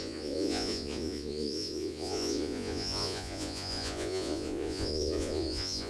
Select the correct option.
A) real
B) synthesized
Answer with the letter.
B